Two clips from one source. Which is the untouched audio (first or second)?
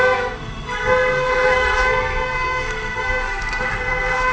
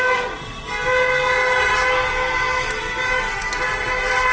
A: second